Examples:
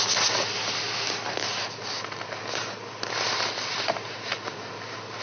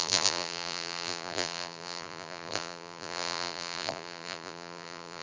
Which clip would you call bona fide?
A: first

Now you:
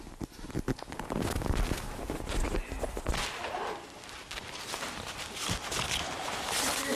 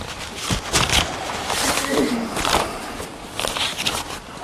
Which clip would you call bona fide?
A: first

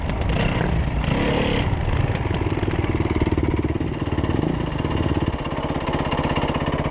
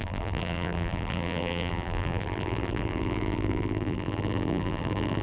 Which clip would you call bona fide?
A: first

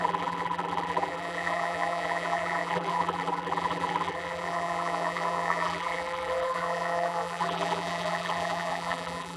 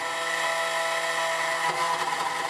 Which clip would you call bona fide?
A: second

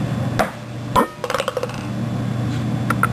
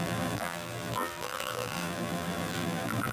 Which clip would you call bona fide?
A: first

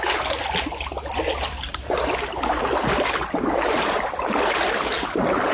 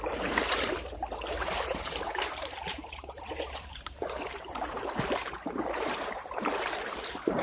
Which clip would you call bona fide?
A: first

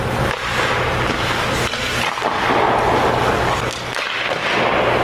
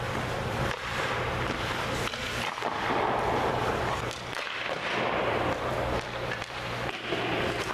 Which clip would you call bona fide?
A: first